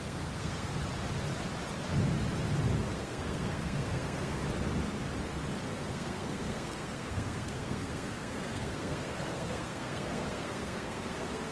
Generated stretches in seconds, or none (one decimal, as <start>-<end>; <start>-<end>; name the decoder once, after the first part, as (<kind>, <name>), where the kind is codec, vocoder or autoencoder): 0.0-0.7 (codec, SNAC); 2.9-4.4; 5.7-11.5